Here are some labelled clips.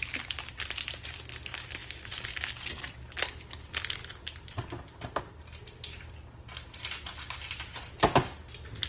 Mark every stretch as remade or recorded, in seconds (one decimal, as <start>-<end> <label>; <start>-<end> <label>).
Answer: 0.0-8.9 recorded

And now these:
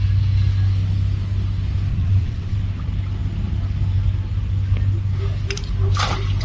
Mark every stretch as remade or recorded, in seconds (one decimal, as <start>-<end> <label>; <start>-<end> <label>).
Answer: 0.0-1.9 recorded; 1.9-2.6 remade; 2.6-6.4 recorded

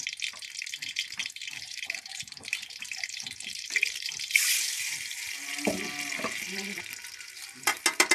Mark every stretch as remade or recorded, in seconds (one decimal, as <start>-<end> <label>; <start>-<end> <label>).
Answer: 0.0-1.2 recorded; 1.2-4.3 remade; 4.3-8.1 recorded